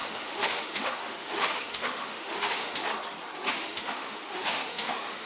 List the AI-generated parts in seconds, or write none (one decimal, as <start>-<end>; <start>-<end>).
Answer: 0.0-2.9; 3.5-5.3